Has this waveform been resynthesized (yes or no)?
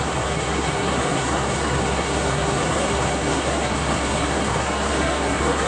yes